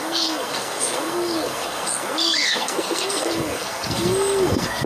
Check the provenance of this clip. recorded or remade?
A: remade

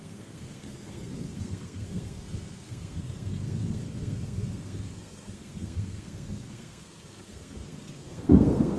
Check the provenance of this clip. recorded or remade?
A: remade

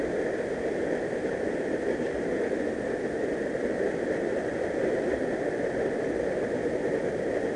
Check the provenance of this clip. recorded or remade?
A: recorded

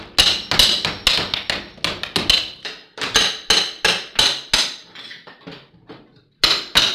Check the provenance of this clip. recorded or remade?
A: recorded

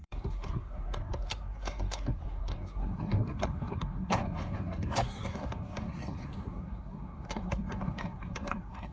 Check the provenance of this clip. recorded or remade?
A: remade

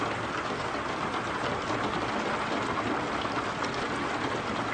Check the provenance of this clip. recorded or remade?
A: recorded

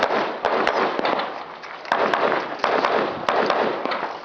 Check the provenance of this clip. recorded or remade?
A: recorded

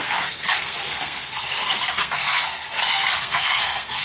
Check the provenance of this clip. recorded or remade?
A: remade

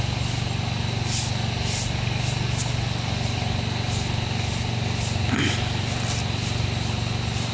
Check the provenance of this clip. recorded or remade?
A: recorded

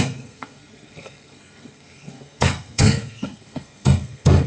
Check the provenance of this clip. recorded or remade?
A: remade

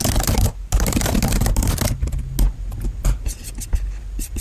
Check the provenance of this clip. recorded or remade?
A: recorded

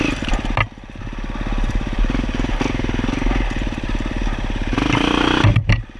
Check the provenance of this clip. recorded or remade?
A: recorded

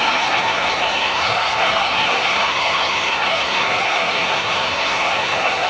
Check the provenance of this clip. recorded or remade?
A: remade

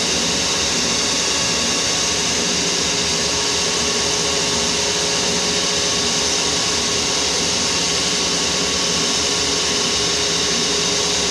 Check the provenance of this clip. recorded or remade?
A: recorded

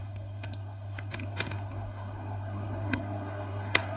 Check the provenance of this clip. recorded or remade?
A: remade